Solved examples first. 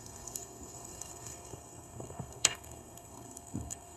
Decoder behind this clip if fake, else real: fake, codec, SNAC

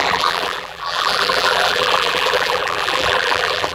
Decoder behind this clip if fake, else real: fake, vocoder, BigVGAN v2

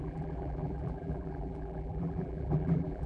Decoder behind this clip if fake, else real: fake, vocoder, BigVGAN v2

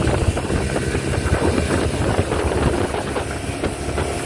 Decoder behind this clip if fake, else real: real